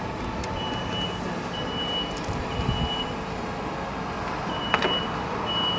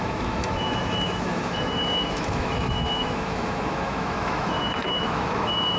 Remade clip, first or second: second